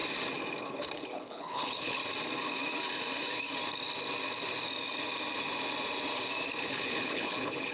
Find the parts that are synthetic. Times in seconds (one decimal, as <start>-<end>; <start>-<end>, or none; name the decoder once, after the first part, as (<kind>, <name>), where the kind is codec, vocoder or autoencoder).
0.6-2.0 (codec, HILCodec); 6.6-7.7